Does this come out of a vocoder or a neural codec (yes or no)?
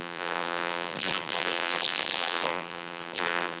yes